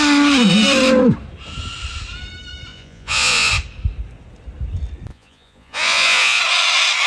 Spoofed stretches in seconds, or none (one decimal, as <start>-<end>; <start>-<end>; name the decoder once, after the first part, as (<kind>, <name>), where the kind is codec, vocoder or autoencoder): 2.7-3.5 (vocoder, Vocos); 5.1-6.4